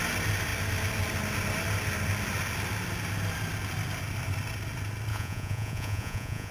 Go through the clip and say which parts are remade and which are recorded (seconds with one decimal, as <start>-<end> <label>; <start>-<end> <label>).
0.0-5.1 recorded; 5.1-6.5 remade